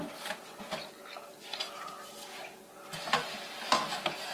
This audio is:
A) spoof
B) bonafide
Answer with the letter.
B